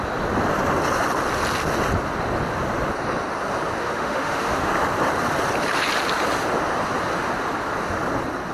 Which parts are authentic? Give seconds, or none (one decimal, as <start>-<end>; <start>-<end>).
0.0-3.8; 4.7-8.5